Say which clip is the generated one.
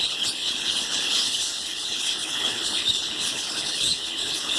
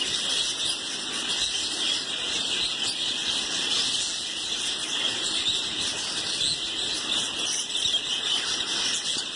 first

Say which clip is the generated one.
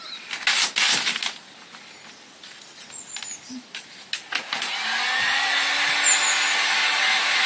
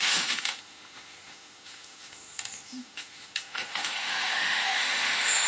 second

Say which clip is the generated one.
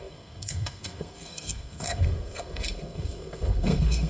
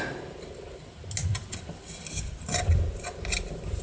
first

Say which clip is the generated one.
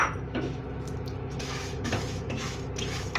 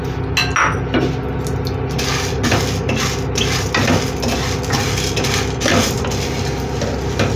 first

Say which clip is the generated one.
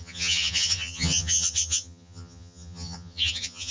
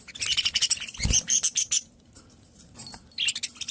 first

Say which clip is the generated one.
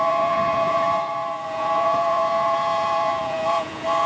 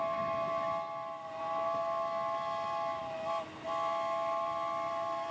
first